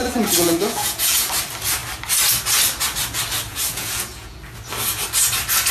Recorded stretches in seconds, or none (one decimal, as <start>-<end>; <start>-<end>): 1.3-3.5; 4.4-5.7